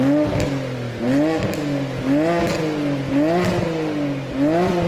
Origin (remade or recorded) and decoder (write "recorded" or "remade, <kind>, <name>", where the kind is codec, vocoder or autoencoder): recorded